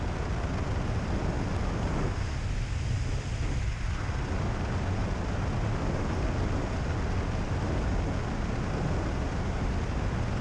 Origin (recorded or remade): recorded